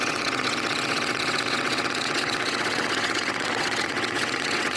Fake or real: fake